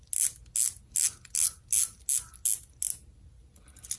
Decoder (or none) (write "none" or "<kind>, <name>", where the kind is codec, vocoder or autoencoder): none